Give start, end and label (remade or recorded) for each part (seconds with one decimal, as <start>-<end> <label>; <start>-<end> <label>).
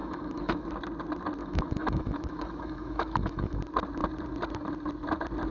0.0-0.7 remade; 0.7-1.4 recorded; 1.4-3.6 remade; 3.6-5.5 recorded